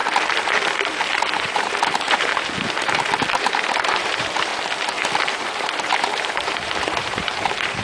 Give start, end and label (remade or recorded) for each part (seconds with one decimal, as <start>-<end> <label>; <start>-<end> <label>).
0.0-1.4 recorded; 1.4-2.3 remade; 2.3-3.3 recorded; 3.3-4.5 remade; 4.5-5.3 recorded; 5.3-7.8 remade